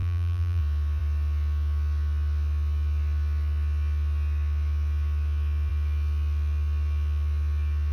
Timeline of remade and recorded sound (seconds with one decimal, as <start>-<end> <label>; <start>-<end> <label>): 0.0-0.6 remade; 0.6-7.9 recorded